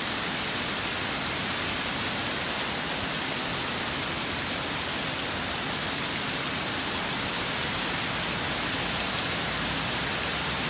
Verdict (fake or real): real